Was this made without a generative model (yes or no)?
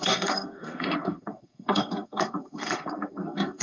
no